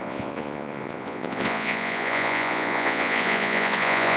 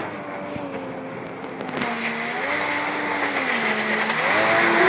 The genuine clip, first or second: second